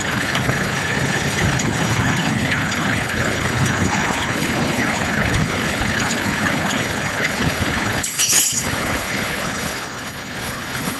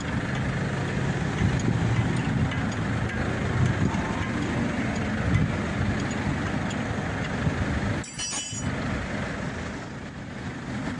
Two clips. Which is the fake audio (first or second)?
first